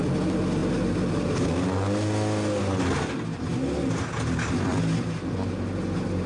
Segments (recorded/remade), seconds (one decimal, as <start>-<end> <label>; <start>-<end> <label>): 0.0-6.3 recorded